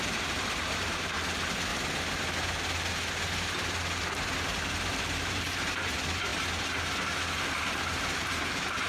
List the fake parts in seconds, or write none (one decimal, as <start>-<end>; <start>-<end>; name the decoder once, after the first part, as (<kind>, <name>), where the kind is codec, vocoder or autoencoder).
0.0-1.7 (vocoder, BigVGAN v2); 4.9-6.3; 7.6-8.9